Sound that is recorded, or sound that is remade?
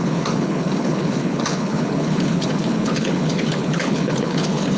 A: remade